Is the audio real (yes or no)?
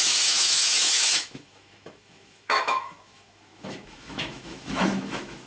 no